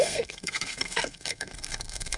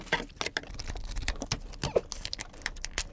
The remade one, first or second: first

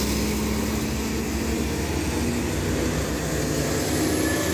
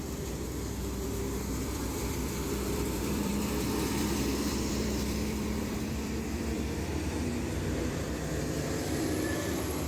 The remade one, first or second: second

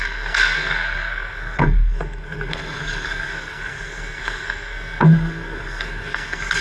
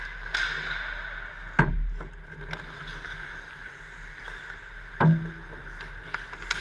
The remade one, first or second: first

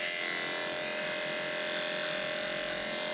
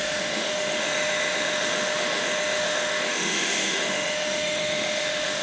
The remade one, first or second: second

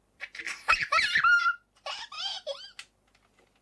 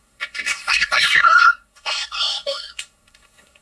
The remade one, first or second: second